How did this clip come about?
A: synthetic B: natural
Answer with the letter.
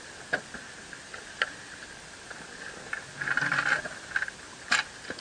B